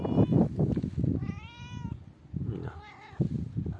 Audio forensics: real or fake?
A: real